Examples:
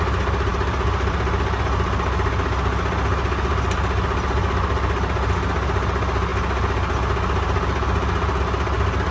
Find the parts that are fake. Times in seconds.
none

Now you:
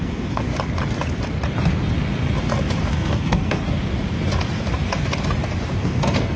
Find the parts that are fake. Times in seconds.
0.0-0.5 (codec, SNAC); 2.9-3.6; 5.8-6.4